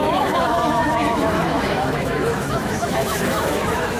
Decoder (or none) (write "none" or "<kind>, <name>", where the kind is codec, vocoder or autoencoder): autoencoder, DAC-VAE